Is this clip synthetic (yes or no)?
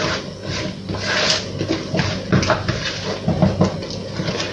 no